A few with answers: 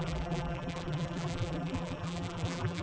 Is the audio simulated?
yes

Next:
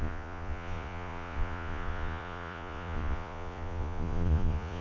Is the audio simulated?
yes